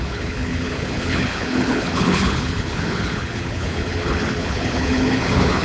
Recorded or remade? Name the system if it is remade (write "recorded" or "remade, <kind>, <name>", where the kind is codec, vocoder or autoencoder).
remade, codec, HILCodec